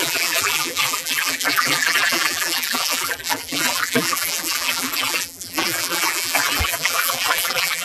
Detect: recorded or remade remade